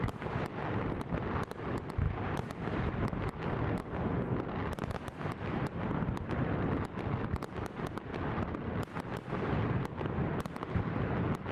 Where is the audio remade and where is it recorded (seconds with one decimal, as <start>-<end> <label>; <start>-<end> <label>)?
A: 0.0-11.5 recorded